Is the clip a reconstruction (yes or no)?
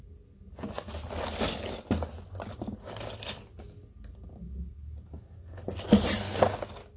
no